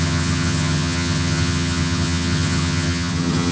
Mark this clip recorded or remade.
remade